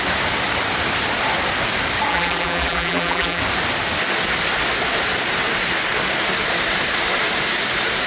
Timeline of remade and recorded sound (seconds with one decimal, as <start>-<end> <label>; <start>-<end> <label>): 0.0-2.1 recorded; 2.1-3.4 remade; 3.4-8.1 recorded